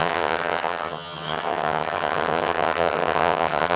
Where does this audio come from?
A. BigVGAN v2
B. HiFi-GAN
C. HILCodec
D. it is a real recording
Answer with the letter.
B